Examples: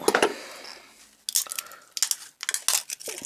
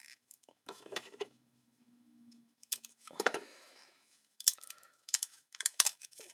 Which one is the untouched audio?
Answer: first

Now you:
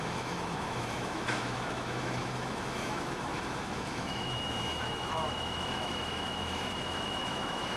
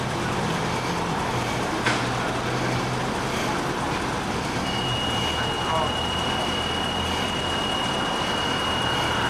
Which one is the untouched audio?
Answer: second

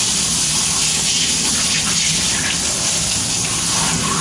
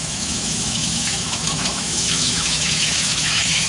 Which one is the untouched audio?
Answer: first